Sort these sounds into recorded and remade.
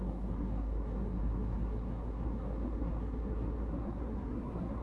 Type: remade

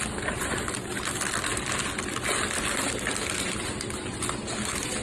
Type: recorded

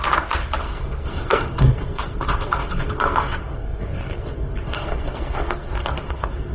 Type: remade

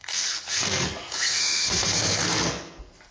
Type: remade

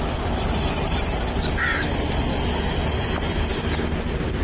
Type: recorded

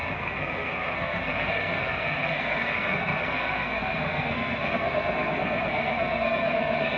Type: remade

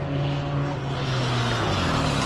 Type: recorded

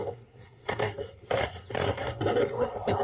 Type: remade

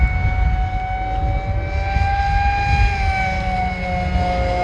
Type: recorded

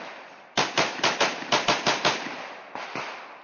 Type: recorded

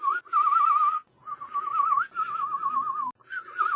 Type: recorded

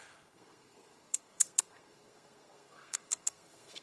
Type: remade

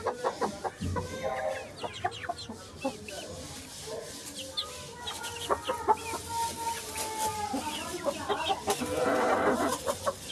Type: recorded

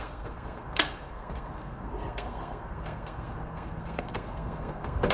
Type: remade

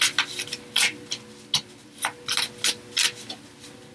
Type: recorded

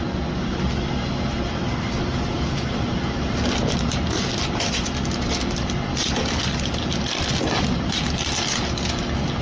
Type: recorded